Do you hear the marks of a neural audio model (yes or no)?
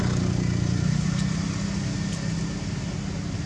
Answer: no